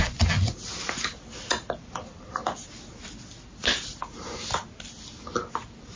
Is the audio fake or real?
real